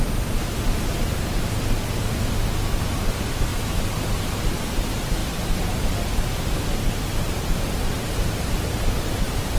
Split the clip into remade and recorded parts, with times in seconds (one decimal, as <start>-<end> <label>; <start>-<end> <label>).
0.0-9.6 recorded